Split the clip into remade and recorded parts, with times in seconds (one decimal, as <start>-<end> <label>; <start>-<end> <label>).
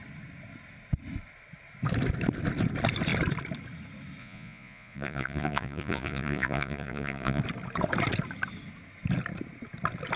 0.0-4.2 recorded; 4.2-7.4 remade; 7.4-10.2 recorded